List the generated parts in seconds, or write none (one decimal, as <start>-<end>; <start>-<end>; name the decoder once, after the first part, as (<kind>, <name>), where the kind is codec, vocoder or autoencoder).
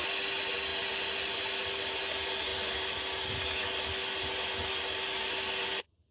none